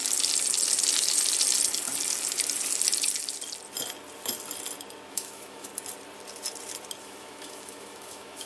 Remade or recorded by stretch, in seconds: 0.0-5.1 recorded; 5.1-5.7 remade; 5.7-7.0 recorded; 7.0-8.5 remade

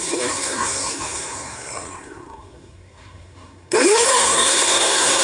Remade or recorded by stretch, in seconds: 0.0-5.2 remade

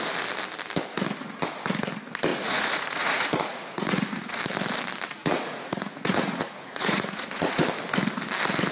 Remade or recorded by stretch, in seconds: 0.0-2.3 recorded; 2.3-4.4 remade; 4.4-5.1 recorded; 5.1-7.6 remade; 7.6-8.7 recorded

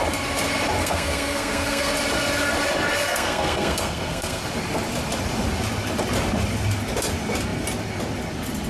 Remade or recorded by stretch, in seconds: 0.0-0.8 recorded; 0.8-1.9 remade; 1.9-3.1 recorded; 3.1-4.4 remade; 4.4-8.7 recorded

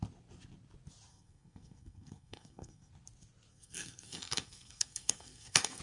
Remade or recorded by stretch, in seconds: 0.0-1.1 recorded; 1.1-2.9 remade; 2.9-3.5 recorded; 3.5-5.8 remade

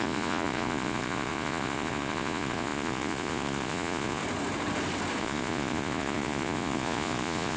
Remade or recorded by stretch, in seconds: 0.0-4.2 remade; 4.2-5.2 recorded; 5.2-7.6 remade